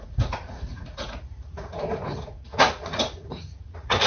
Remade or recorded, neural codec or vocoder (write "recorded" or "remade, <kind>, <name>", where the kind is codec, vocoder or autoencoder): remade, vocoder, Vocos